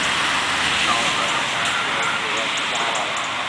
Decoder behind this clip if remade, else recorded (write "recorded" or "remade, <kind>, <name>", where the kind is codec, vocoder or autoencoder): recorded